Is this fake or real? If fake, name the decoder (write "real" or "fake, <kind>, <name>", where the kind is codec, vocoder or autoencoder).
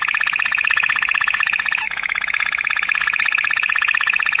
fake, vocoder, Vocos